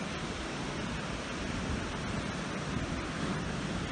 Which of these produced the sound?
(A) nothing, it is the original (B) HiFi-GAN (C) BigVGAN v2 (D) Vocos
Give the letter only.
A